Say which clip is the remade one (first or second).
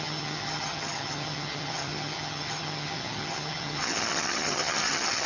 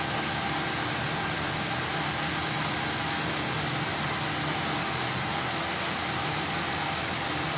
first